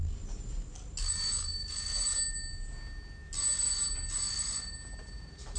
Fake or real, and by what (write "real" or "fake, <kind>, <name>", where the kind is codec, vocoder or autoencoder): real